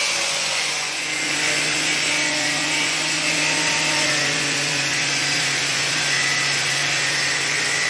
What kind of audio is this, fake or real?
fake